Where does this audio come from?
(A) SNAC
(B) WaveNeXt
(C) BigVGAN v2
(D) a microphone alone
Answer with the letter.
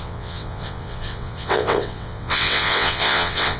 B